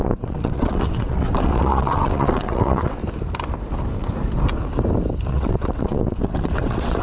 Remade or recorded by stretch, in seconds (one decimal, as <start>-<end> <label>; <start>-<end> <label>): 0.0-3.0 remade; 3.0-5.3 recorded; 5.3-7.0 remade